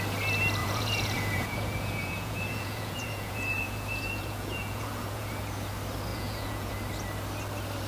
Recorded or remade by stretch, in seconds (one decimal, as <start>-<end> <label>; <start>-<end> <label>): 0.0-0.6 recorded; 0.6-5.3 remade; 5.3-6.1 recorded; 6.1-6.7 remade; 6.7-7.9 recorded